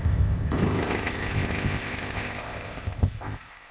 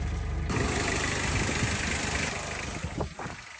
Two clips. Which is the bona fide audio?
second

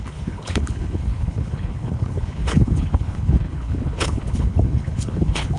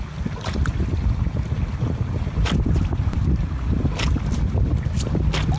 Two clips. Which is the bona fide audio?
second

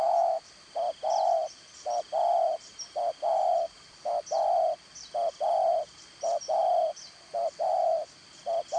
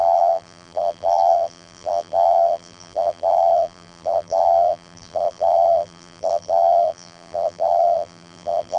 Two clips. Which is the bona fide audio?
first